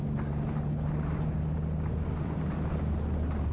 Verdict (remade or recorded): recorded